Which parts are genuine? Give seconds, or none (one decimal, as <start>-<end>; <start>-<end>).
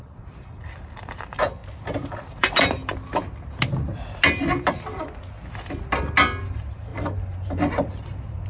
1.6-2.1; 2.8-6.4